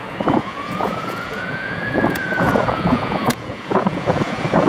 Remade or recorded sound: remade